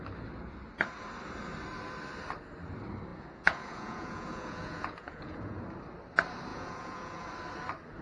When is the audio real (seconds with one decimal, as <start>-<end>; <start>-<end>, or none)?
0.0-3.1; 5.6-6.5; 7.3-8.0